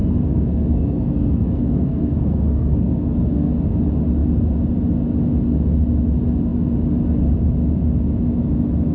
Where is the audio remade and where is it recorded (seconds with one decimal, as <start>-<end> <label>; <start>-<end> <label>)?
0.0-3.5 remade; 3.5-8.9 recorded